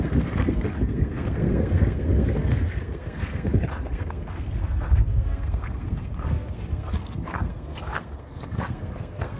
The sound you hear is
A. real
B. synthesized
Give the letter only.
B